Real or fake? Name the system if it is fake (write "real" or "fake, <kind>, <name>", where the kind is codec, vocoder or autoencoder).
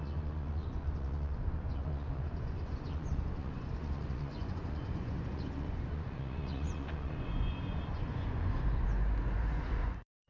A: fake, vocoder, Vocos